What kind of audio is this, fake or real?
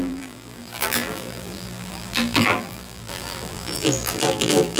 fake